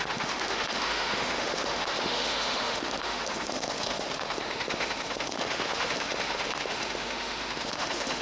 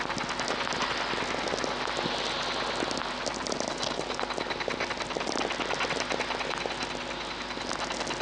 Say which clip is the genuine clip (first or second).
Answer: second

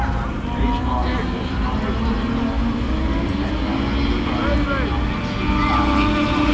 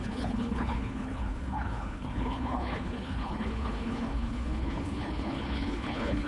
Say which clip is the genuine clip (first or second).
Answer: first